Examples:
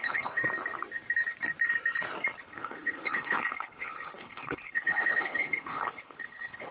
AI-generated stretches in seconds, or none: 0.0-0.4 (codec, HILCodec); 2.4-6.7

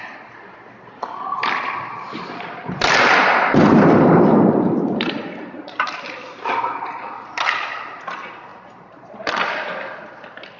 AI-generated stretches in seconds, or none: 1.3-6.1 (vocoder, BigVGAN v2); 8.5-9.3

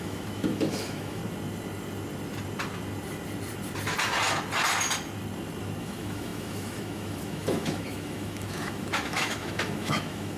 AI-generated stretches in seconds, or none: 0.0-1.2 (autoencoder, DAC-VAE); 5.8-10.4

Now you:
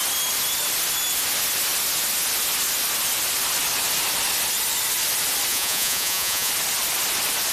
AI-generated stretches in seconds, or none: 5.5-6.5 (vocoder, Vocos)